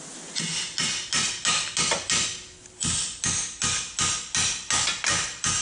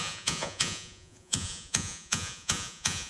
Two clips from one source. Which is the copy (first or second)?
second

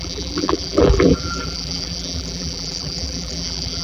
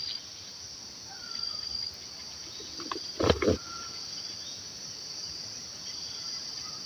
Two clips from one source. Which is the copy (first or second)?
first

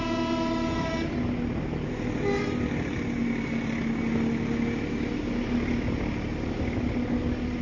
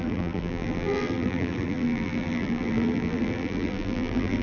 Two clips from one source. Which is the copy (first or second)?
second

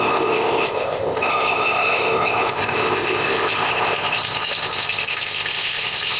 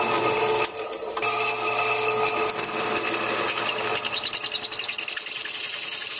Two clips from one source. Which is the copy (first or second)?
first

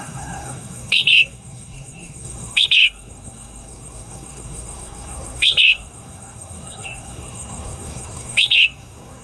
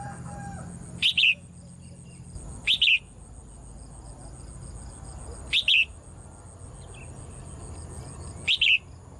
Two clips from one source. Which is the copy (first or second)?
first